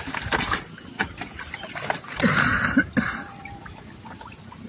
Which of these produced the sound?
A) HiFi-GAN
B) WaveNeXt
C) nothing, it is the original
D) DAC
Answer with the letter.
C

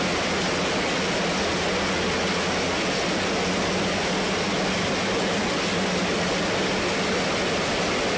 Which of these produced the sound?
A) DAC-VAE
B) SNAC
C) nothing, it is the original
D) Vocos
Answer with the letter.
C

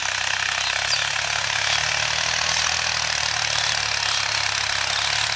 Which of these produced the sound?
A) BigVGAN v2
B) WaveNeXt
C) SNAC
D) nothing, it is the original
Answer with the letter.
D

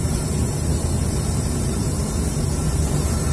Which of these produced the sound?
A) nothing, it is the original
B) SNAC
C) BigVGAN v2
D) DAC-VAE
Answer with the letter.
C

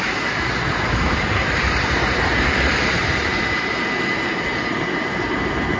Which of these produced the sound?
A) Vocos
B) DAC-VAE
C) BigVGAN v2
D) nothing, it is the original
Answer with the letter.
C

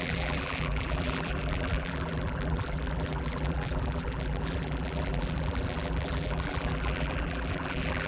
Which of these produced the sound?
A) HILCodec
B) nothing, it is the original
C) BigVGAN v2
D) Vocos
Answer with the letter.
C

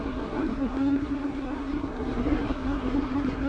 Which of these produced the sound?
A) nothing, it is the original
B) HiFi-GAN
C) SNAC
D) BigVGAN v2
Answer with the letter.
C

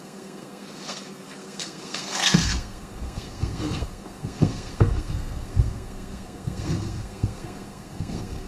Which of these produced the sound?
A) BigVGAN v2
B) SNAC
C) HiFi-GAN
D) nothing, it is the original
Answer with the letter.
B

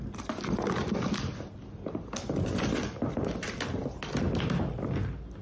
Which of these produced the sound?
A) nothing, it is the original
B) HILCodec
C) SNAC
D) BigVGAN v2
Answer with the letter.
A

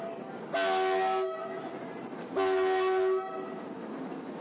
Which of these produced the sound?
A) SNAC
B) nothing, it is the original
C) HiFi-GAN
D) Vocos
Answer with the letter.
B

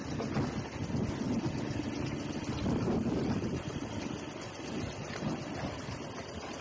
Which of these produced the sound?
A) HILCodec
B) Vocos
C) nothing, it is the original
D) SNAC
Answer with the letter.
C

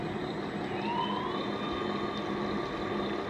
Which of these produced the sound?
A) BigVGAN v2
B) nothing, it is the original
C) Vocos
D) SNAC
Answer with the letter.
B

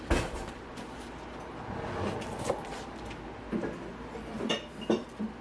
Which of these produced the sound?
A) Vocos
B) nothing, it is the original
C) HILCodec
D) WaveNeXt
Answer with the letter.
B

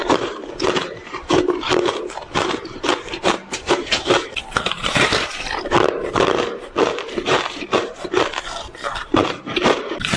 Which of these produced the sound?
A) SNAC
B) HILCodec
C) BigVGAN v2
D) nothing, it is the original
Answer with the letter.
C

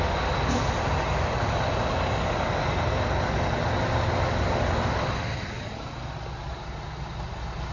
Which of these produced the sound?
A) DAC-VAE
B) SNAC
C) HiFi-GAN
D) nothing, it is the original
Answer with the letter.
D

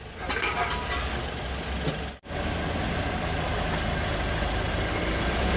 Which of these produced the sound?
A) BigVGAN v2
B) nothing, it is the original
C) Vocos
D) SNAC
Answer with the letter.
B